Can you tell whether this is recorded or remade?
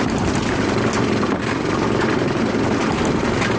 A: remade